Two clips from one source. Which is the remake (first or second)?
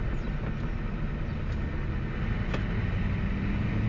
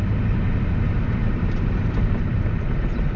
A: second